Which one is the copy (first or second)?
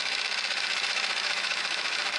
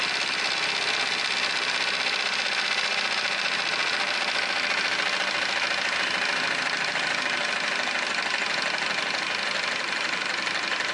first